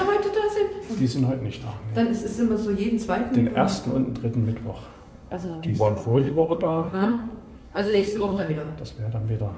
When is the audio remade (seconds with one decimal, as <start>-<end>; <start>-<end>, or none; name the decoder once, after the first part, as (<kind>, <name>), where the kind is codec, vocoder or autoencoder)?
4.9-8.5 (codec, SNAC)

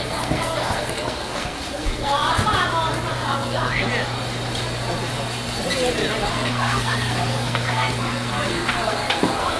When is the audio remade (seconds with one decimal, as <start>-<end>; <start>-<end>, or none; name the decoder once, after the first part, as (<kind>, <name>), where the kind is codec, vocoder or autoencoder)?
0.0-2.2 (codec, SNAC); 3.1-3.9; 6.2-9.6

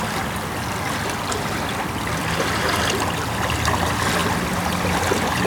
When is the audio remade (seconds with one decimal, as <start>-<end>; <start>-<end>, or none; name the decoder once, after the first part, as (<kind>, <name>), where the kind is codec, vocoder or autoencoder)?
none

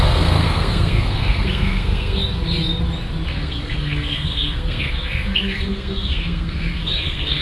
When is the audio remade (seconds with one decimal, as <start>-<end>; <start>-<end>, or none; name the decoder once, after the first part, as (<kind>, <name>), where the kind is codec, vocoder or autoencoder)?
0.0-2.2 (codec, SNAC); 3.3-7.4